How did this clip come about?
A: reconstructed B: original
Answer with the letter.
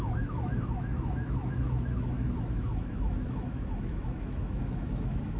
A